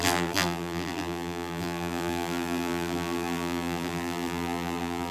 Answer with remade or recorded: remade